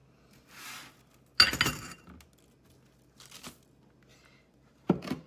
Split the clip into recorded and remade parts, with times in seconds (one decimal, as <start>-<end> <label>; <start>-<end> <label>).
0.0-4.1 recorded; 4.1-5.3 remade